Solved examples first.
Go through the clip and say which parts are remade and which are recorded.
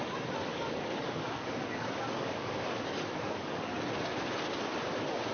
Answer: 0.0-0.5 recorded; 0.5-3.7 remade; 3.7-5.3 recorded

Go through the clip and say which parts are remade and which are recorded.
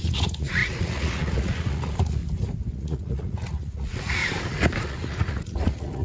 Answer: 0.0-2.2 remade; 2.2-2.7 recorded; 2.7-4.2 remade; 4.2-4.8 recorded; 4.8-6.0 remade